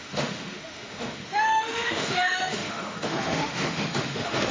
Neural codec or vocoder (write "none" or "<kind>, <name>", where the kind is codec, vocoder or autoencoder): autoencoder, DAC-VAE